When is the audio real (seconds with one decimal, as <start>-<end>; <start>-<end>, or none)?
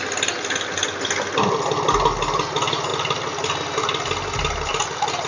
0.0-5.3